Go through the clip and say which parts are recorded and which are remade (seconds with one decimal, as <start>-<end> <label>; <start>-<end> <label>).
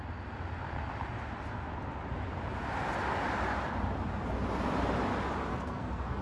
0.0-5.5 recorded; 5.5-6.2 remade